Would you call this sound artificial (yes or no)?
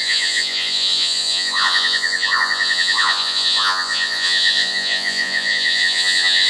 yes